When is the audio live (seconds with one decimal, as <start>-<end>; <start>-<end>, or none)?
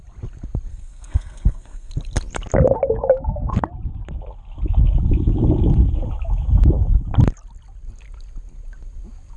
0.0-0.7; 1.9-9.4